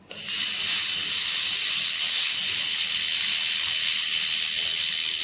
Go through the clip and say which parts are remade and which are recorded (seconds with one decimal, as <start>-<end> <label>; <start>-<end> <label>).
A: 0.0-5.2 recorded